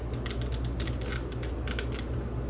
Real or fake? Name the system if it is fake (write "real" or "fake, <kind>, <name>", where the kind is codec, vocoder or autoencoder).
real